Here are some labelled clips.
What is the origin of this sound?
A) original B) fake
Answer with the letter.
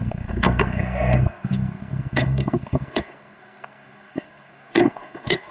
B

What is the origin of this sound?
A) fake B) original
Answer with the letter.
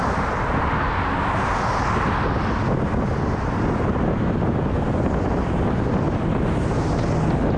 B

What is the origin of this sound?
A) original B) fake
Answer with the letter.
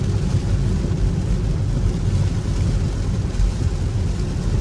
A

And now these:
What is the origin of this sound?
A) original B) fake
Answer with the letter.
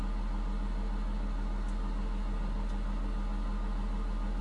A